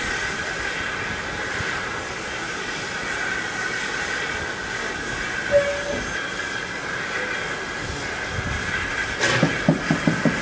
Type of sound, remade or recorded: recorded